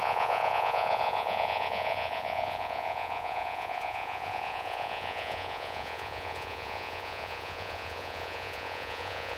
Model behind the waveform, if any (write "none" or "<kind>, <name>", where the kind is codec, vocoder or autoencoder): vocoder, Vocos